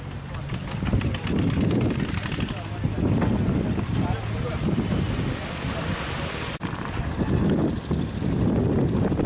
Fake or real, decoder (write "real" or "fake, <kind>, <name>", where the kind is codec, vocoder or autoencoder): real